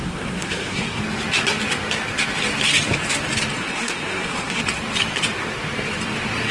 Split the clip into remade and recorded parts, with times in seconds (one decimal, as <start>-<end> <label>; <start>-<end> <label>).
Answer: 0.0-1.0 remade; 1.0-3.6 recorded; 3.6-4.6 remade; 4.6-6.5 recorded